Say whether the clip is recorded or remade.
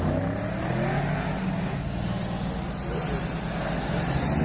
recorded